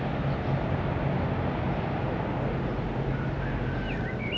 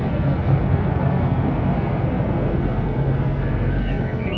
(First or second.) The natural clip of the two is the first